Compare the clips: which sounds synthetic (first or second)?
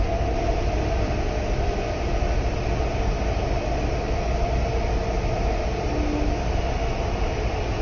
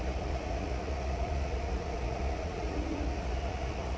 second